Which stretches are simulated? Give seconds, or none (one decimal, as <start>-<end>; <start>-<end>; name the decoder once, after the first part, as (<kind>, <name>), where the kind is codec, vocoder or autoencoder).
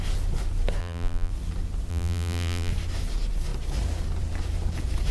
0.8-1.3 (vocoder, BigVGAN v2); 1.9-2.7